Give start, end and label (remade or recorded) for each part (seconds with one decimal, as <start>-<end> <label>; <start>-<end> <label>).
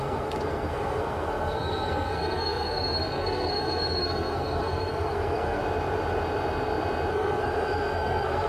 0.0-5.6 remade; 5.6-7.1 recorded; 7.1-8.5 remade